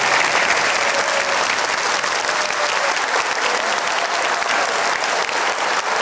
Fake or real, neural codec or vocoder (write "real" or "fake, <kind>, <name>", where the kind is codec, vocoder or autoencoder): real